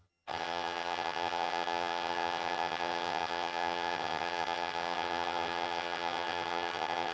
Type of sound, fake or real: fake